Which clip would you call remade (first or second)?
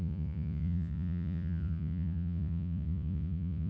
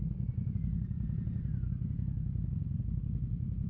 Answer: first